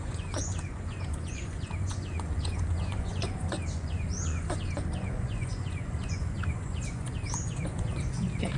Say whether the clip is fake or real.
fake